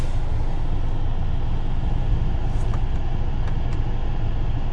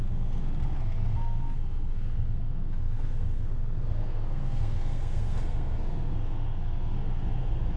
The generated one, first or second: second